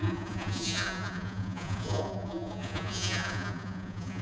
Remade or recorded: remade